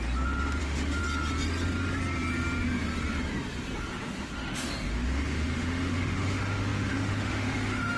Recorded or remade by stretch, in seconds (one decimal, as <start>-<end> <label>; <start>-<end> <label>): 0.0-0.6 recorded; 0.6-1.0 remade; 1.0-3.9 recorded; 3.9-8.0 remade